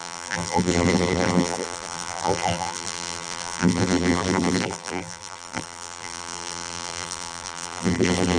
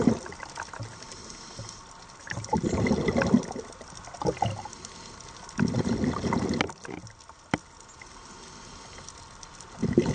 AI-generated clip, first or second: first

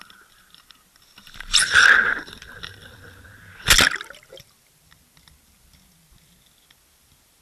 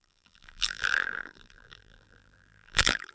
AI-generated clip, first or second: second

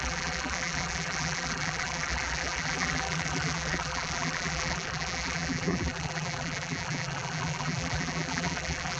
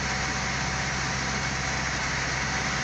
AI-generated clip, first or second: first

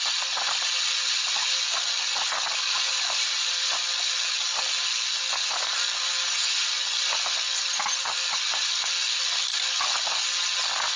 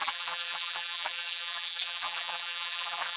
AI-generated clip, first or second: second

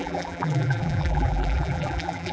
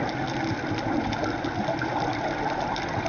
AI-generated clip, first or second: first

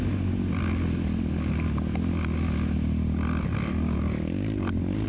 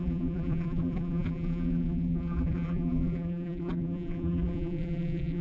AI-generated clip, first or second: second